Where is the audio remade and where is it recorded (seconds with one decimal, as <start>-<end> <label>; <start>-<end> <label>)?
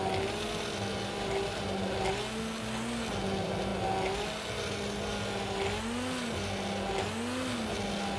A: 0.0-8.2 recorded